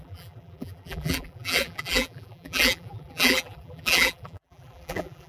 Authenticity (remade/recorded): remade